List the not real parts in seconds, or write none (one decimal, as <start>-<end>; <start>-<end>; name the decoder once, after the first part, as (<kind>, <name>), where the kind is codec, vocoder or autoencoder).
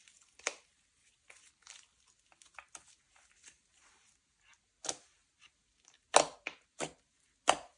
none